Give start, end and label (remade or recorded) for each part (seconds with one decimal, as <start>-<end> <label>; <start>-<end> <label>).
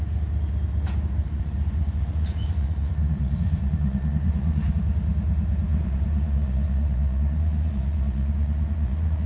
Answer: 0.0-1.2 recorded; 1.2-4.7 remade; 4.7-5.7 recorded; 5.7-9.3 remade